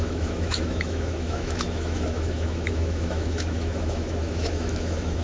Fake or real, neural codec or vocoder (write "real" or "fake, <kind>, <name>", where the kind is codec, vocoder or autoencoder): fake, autoencoder, DAC-VAE